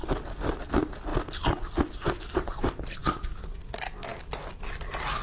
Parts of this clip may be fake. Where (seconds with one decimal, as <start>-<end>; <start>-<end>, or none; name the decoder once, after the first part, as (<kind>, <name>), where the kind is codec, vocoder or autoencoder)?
3.0-3.6 (vocoder, Vocos)